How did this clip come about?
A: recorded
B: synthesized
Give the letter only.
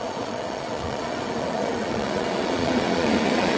B